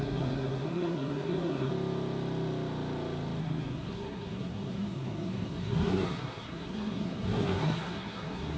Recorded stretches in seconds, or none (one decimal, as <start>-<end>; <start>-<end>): 1.7-3.4